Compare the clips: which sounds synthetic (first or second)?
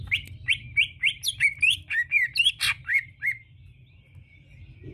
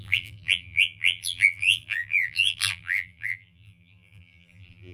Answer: second